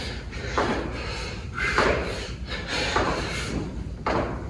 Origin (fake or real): fake